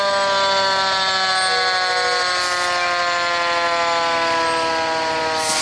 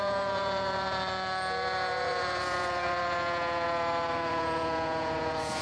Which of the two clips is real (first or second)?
first